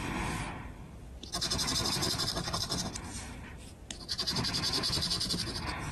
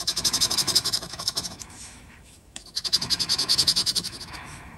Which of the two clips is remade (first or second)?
second